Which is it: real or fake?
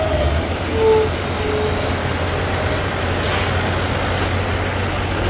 real